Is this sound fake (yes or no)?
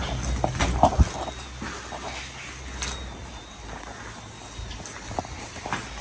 no